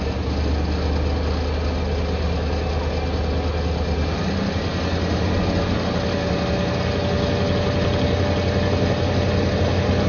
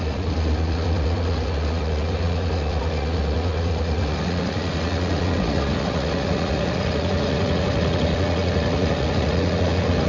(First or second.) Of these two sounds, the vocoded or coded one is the second